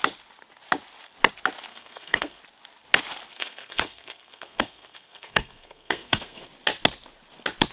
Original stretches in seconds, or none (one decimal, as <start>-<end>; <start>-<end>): 0.0-1.7; 2.4-3.3; 6.5-7.7